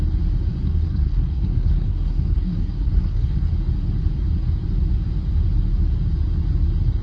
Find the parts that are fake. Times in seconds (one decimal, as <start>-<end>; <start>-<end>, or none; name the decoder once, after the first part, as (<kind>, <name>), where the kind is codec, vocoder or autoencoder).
0.6-3.5 (codec, SNAC)